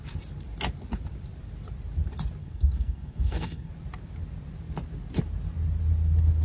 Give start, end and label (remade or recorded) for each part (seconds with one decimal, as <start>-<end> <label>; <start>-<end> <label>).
0.0-2.4 recorded; 2.4-3.7 remade; 3.7-6.4 recorded